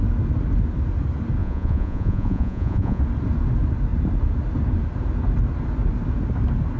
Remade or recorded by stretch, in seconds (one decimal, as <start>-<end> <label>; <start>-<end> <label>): 0.0-1.4 recorded; 1.4-3.0 remade; 3.0-6.8 recorded

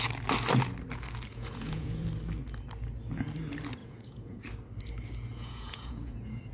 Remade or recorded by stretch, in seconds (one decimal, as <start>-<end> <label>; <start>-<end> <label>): 0.0-1.3 recorded; 1.3-2.0 remade; 2.0-3.8 recorded; 3.8-4.4 remade; 4.4-5.3 recorded; 5.3-6.5 remade

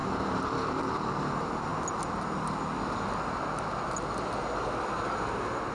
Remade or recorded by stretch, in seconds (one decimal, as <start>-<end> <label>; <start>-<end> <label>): 0.0-1.7 remade; 1.7-5.1 recorded; 5.1-5.7 remade

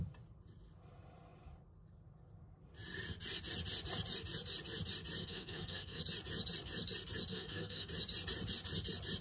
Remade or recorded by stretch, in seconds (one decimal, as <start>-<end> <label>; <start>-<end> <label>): 0.0-5.2 recorded; 5.2-6.0 remade; 6.0-7.3 recorded; 7.3-7.9 remade; 7.9-9.2 recorded

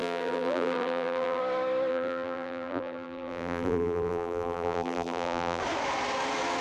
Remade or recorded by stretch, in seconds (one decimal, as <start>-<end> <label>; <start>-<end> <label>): 0.0-1.4 remade; 1.4-1.9 recorded; 1.9-5.6 remade; 5.6-6.6 recorded